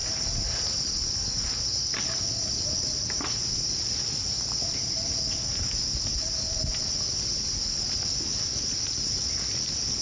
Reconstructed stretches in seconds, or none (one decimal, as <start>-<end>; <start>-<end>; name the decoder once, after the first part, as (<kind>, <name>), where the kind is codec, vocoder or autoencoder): none